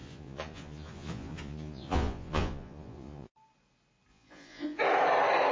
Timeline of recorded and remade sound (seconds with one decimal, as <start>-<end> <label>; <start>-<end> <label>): 0.0-3.3 remade; 3.3-4.1 recorded; 4.1-4.8 remade; 4.8-5.5 recorded